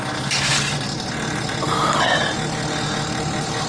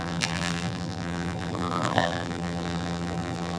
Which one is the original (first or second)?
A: first